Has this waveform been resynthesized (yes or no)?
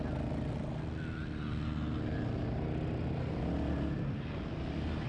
no